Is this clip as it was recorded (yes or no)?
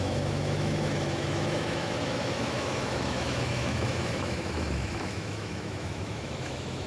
no